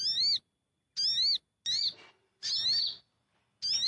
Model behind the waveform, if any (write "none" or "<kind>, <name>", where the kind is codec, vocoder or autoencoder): none